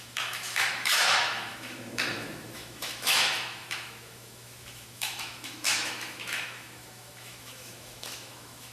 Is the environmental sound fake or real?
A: fake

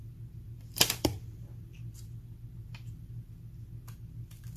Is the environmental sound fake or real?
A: fake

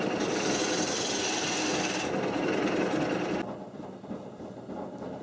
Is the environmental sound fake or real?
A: real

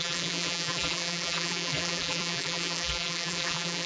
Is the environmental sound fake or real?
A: fake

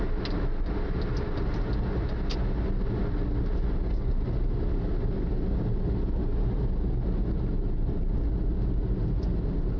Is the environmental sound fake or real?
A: real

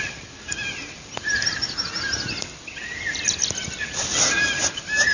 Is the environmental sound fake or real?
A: real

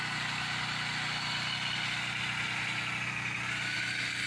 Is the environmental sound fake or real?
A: real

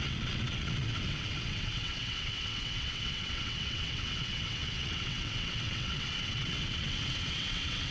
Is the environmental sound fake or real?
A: fake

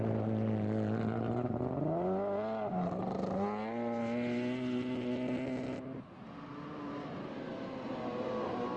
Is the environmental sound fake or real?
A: real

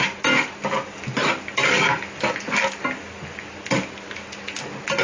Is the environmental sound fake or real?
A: real